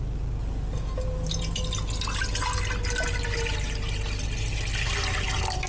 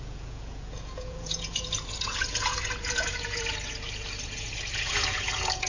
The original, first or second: first